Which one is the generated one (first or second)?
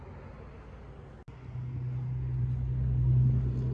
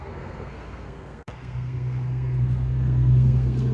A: second